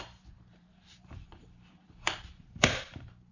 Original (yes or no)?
no